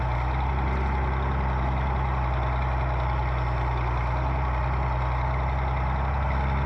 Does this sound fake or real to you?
real